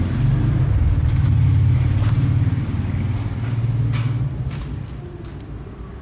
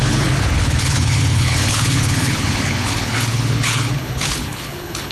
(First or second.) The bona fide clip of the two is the first